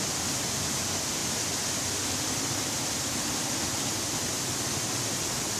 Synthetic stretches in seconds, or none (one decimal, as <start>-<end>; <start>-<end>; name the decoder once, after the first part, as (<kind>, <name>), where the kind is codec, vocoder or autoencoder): none